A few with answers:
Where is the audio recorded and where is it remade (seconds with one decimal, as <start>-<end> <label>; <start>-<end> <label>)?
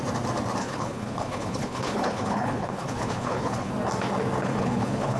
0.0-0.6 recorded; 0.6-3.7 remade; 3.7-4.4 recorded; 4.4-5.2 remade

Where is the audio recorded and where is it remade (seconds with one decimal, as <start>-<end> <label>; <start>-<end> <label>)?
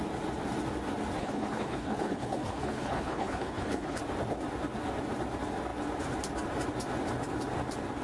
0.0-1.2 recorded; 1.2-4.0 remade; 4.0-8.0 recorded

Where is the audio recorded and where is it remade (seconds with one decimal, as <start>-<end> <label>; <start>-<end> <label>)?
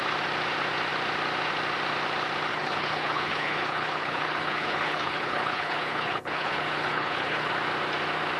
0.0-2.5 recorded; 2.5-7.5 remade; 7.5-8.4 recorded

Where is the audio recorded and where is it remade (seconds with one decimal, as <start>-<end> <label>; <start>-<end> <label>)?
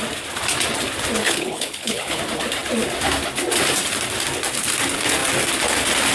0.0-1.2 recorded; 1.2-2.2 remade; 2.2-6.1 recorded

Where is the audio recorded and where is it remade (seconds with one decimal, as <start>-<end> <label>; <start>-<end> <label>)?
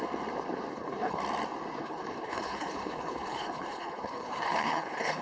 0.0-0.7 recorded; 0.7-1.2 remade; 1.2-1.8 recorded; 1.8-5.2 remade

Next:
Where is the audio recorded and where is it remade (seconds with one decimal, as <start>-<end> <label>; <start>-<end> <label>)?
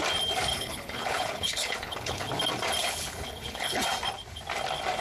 0.0-0.5 recorded; 0.5-2.3 remade; 2.3-2.8 recorded; 2.8-3.8 remade; 3.8-5.0 recorded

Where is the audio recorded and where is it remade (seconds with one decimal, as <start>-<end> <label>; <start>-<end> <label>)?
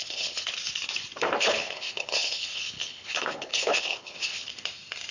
0.0-0.5 remade; 0.5-1.4 recorded; 1.4-4.5 remade; 4.5-5.1 recorded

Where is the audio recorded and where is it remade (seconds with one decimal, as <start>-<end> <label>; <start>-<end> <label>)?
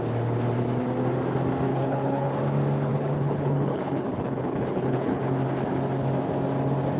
0.0-1.7 recorded; 1.7-2.4 remade; 2.4-2.9 recorded; 2.9-5.2 remade; 5.2-7.0 recorded